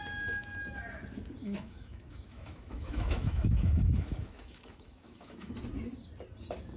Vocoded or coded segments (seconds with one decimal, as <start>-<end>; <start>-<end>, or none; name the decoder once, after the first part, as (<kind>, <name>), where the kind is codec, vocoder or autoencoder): 1.4-5.5 (autoencoder, DAC-VAE)